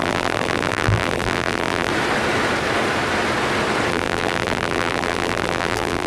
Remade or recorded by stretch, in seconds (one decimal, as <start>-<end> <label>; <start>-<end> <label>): 0.0-1.9 remade; 1.9-3.9 recorded; 3.9-6.1 remade